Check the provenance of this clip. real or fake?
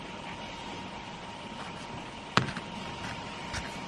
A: real